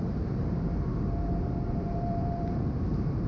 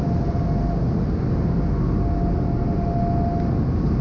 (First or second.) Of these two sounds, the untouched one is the second